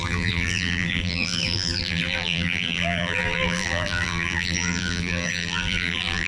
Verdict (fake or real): fake